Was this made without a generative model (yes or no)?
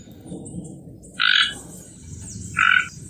yes